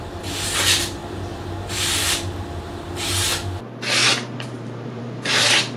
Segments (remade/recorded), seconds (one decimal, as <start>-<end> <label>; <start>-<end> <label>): 0.0-1.0 recorded; 1.0-3.6 remade; 3.6-4.0 recorded; 4.0-5.8 remade